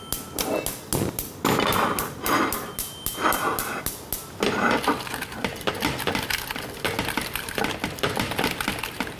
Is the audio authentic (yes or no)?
yes